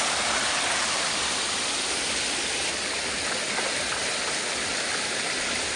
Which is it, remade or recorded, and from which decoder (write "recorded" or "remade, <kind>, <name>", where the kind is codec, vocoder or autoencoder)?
recorded